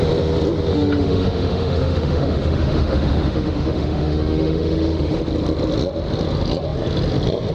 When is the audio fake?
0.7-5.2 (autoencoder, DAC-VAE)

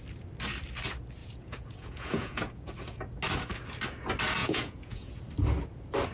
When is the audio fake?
1.2-2.7 (vocoder, Vocos); 4.4-5.2

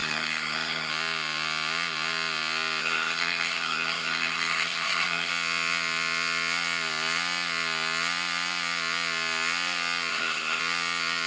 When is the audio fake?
0.0-0.9 (codec, SNAC); 2.8-5.3; 10.1-10.6

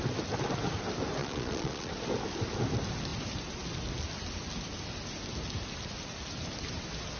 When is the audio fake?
1.2-1.9 (vocoder, Vocos)